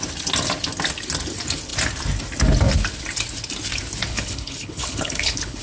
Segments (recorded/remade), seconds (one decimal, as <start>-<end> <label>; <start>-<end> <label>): 0.0-4.1 recorded; 4.1-5.6 remade